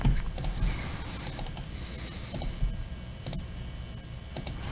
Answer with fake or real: real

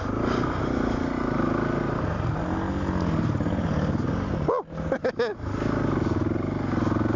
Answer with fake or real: real